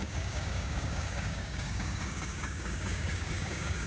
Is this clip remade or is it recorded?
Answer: remade